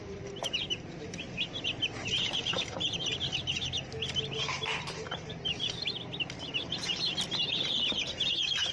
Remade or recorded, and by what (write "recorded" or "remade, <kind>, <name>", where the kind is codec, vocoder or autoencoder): recorded